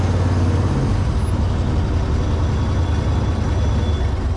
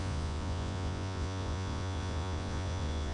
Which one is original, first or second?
first